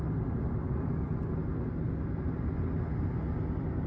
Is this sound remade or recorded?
recorded